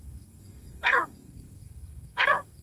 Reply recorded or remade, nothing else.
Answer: remade